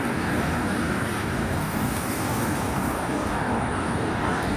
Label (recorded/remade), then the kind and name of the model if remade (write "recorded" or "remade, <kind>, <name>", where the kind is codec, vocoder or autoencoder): remade, codec, DAC